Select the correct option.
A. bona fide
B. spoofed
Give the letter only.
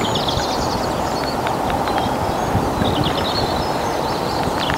A